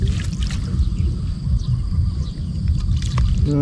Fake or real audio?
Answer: real